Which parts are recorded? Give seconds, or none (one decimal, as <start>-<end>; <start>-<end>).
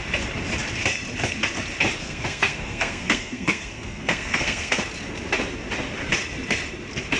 0.0-2.0; 4.8-7.2